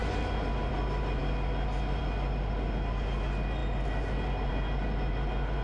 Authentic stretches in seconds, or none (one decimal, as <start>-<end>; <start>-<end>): 0.0-5.6